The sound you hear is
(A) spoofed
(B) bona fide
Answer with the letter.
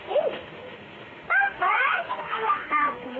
A